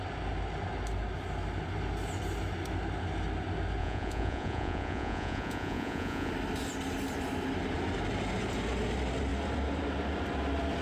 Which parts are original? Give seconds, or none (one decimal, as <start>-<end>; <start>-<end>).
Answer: 0.0-3.8; 6.3-10.8

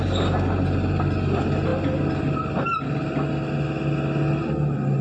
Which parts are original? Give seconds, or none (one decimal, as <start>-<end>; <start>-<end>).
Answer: 0.0-5.0